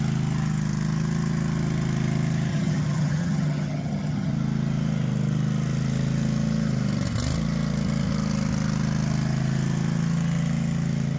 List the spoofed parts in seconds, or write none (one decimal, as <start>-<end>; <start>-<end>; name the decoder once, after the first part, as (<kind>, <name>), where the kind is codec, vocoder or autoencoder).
2.5-4.3 (vocoder, HiFi-GAN)